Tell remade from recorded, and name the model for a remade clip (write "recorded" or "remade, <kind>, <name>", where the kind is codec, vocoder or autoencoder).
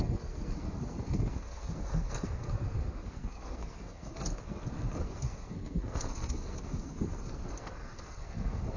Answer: remade, codec, SNAC